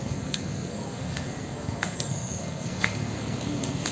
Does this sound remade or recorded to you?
remade